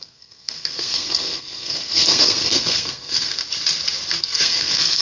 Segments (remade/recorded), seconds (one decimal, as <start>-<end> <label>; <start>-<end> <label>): 0.0-3.4 remade; 3.4-4.2 recorded; 4.2-5.0 remade